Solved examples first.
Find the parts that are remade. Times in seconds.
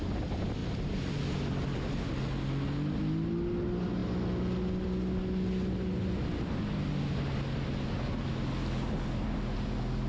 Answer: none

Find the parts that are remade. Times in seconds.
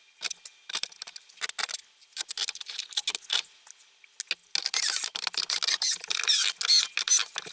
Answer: none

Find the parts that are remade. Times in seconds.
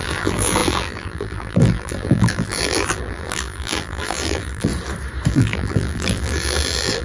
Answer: 0.0-4.7 (vocoder, BigVGAN v2); 5.3-7.0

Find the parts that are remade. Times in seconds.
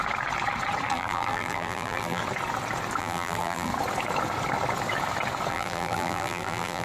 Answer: 0.9-2.2 (vocoder, BigVGAN v2); 3.0-3.7; 5.5-6.8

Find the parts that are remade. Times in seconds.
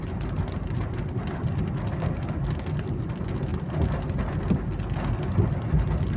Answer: none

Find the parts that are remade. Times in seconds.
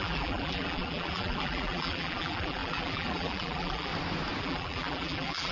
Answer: 0.0-3.9 (vocoder, BigVGAN v2); 4.4-5.5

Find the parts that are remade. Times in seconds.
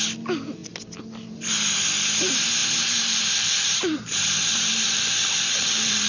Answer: 2.6-6.1 (vocoder, BigVGAN v2)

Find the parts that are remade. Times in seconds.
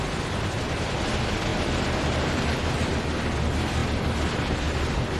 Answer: 1.5-2.2 (vocoder, BigVGAN v2)